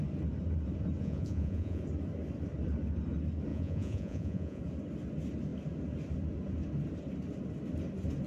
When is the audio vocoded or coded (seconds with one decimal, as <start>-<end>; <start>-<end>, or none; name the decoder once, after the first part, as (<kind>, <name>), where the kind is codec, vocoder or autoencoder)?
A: 1.0-1.8 (vocoder, Vocos); 3.5-4.6